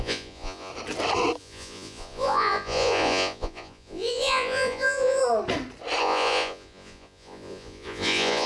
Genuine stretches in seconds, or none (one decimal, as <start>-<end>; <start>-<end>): 0.7-1.4; 5.2-6.0